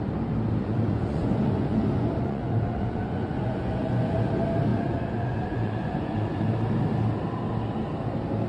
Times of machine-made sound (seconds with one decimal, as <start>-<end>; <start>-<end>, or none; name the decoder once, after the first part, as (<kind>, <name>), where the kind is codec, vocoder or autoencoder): 0.6-4.3 (vocoder, Vocos); 4.7-6.5